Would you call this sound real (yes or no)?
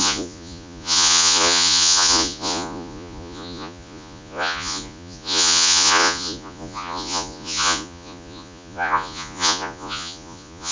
no